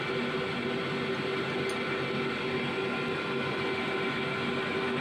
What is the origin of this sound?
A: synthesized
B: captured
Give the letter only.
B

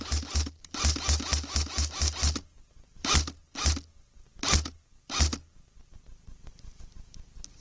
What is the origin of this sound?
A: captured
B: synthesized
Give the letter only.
A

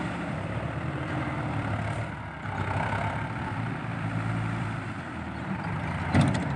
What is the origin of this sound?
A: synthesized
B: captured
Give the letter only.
A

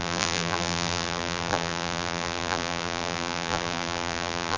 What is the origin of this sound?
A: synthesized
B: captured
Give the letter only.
A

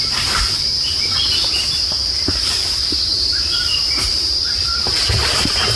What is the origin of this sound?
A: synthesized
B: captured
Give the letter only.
A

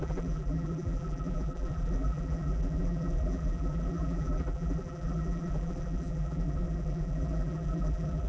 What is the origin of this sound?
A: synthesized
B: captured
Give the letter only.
A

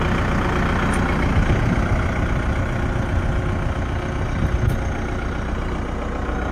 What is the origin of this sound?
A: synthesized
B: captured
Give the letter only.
B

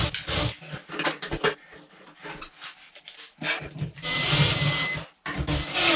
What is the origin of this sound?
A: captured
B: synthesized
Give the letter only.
A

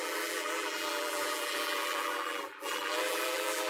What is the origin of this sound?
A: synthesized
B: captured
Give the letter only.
A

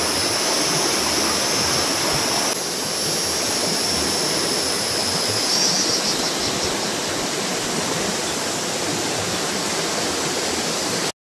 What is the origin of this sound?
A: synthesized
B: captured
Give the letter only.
B